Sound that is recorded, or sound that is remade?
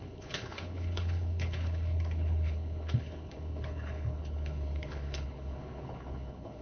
remade